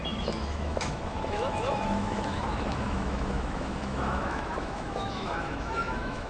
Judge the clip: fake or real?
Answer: fake